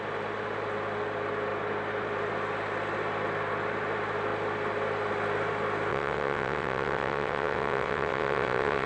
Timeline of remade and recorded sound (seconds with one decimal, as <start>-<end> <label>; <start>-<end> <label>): 0.0-5.9 recorded; 5.9-8.9 remade